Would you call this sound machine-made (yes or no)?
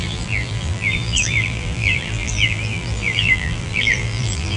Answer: yes